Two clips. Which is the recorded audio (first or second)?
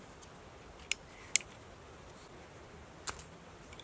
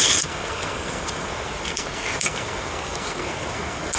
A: first